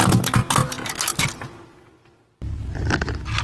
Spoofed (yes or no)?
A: no